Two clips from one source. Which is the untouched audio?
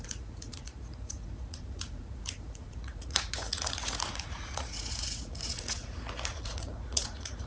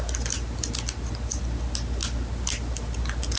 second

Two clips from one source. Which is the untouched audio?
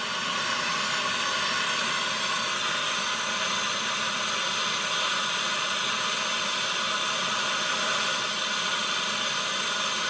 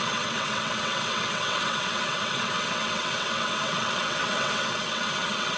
first